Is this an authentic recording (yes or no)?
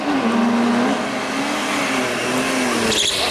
yes